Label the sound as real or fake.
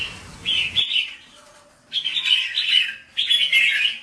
real